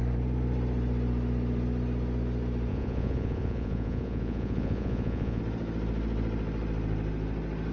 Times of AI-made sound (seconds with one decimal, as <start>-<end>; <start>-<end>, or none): 2.7-5.4